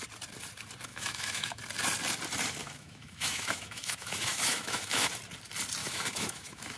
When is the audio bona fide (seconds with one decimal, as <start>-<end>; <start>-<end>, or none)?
0.0-0.9; 1.6-2.6; 5.1-5.8